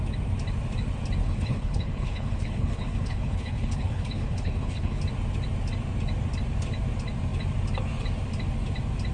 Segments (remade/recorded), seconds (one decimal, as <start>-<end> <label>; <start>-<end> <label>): 0.0-1.2 recorded; 1.2-5.0 remade; 5.0-9.1 recorded